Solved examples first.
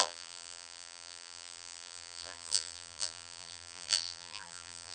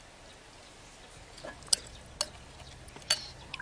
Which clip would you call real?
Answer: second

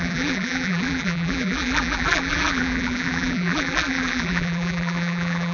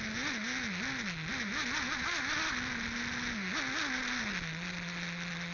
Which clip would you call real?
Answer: second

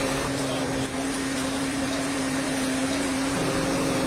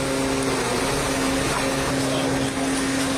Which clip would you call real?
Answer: second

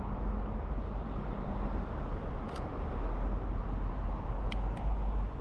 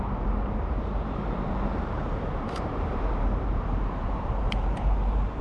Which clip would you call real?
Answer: first